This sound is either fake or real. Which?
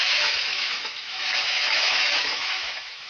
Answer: fake